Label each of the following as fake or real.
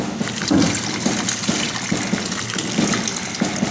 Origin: real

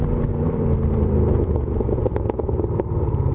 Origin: fake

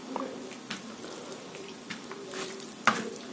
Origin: real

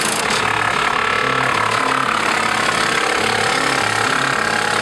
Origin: real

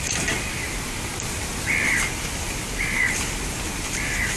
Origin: fake